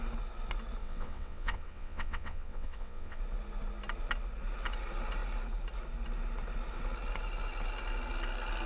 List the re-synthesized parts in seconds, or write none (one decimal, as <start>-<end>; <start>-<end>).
0.8-3.2